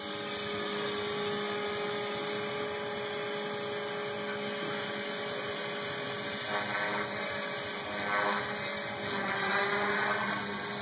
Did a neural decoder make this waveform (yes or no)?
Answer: no